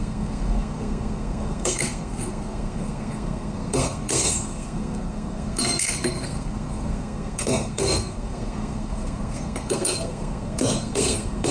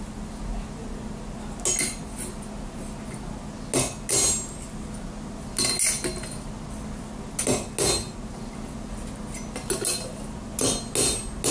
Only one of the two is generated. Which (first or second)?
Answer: first